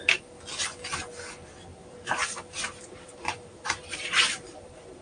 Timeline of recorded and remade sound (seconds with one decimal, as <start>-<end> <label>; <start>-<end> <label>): 0.0-1.7 recorded; 1.7-5.0 remade